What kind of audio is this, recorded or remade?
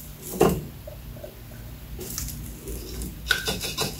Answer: recorded